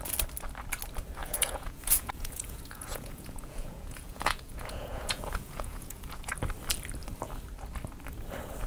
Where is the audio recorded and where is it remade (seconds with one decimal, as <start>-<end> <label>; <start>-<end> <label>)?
0.0-1.2 recorded; 1.2-6.3 remade; 6.3-8.7 recorded